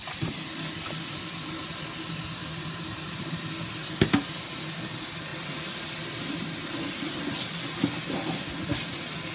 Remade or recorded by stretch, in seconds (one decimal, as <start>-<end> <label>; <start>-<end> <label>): 0.0-9.3 recorded